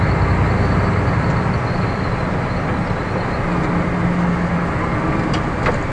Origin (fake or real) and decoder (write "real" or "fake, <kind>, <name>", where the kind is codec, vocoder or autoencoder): real